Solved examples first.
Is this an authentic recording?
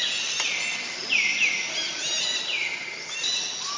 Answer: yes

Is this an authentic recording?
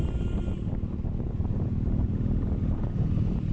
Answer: yes